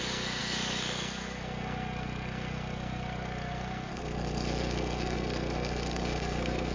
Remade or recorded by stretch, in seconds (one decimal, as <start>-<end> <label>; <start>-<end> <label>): 0.0-6.7 remade